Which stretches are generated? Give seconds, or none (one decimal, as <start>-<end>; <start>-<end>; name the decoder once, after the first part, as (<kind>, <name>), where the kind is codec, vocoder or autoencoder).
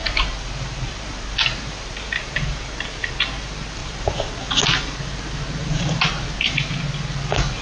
0.0-3.1 (vocoder, BigVGAN v2); 3.8-4.3; 5.6-6.8